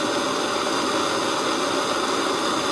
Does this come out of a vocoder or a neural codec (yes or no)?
no